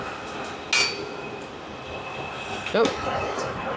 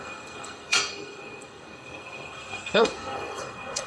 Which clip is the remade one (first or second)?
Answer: second